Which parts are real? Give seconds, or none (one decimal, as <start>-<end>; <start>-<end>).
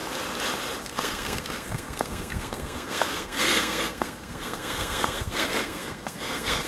0.0-0.8